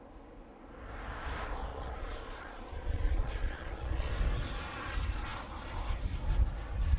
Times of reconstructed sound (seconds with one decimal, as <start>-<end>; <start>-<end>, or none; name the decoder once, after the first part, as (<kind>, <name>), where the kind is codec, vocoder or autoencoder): 1.7-4.1 (vocoder, Vocos)